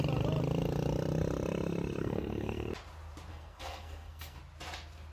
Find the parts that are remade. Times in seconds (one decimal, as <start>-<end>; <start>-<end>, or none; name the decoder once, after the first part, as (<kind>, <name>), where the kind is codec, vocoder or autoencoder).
2.0-2.7 (codec, SNAC); 3.3-4.4